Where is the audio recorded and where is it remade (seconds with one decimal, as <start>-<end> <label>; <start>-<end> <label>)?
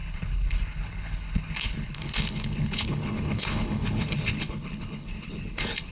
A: 0.0-5.9 remade